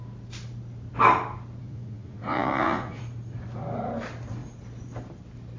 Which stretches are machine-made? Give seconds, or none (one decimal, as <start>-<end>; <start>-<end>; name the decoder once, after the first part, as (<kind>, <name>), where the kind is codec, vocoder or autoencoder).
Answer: 1.6-3.0 (vocoder, Vocos)